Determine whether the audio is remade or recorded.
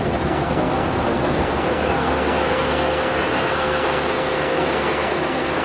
remade